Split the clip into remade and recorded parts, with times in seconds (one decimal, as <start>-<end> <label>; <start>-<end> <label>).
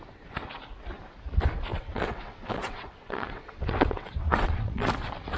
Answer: 0.0-1.7 recorded; 1.7-4.9 remade; 4.9-5.4 recorded